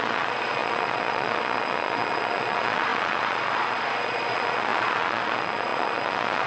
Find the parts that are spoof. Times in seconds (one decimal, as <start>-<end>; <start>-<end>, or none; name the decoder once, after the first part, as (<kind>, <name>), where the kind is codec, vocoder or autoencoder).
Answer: 0.0-6.5 (vocoder, Vocos)